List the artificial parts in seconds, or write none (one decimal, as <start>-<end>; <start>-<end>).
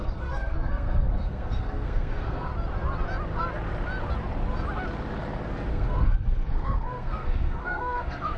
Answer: 0.0-2.5; 5.7-8.4